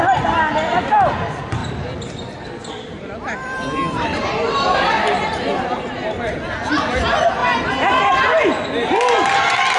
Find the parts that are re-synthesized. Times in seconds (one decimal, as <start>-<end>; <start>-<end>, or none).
1.6-4.9; 7.4-8.1